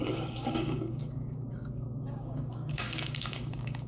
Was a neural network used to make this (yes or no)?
yes